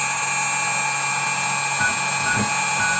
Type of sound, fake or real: real